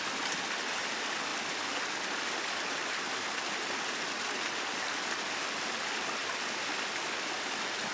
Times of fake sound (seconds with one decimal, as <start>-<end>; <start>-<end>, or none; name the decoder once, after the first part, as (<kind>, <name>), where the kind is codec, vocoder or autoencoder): none